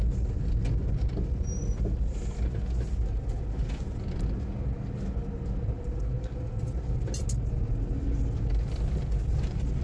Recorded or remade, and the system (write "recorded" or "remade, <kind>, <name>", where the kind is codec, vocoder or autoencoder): recorded